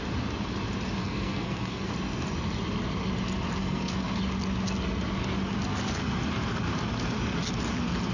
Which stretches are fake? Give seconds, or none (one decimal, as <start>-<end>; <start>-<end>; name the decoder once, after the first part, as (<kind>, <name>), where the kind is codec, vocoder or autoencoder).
1.0-1.9 (codec, SNAC); 3.6-4.2